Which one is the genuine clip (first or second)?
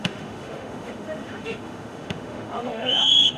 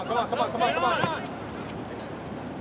second